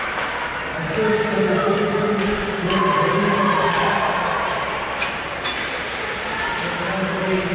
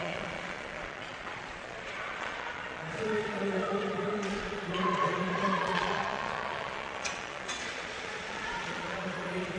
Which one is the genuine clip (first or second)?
first